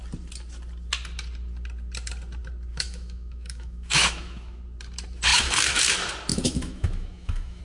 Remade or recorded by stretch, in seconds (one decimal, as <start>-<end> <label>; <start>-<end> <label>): 0.0-2.7 recorded; 2.7-4.6 remade; 4.6-5.3 recorded; 5.3-5.8 remade; 5.8-6.3 recorded; 6.3-7.6 remade